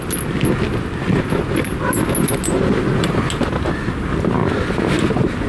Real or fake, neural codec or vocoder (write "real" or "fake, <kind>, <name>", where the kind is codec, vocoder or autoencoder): real